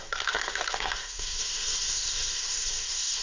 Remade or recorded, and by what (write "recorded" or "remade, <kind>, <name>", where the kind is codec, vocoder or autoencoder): remade, codec, SNAC